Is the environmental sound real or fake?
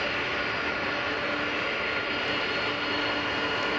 real